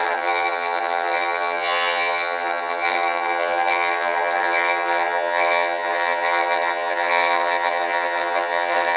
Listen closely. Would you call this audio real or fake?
fake